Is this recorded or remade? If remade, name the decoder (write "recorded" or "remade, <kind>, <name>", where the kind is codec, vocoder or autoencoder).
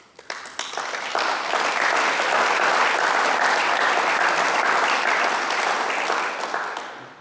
recorded